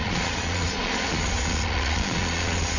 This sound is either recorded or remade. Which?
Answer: remade